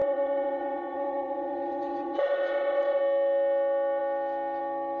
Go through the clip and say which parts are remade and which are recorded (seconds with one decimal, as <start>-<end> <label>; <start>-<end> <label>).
0.0-3.0 remade; 3.0-5.0 recorded